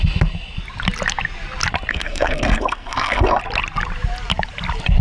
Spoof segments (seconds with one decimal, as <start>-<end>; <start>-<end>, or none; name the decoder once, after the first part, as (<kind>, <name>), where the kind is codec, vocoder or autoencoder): 1.9-3.4 (codec, SNAC)